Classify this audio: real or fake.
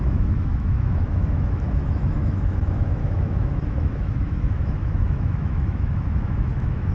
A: fake